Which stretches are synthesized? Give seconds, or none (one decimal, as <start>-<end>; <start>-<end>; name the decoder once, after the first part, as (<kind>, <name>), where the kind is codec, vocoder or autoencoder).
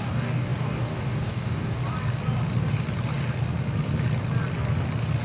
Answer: 0.0-1.8 (codec, DAC)